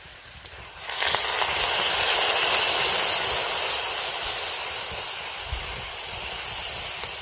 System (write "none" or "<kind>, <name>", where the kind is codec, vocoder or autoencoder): none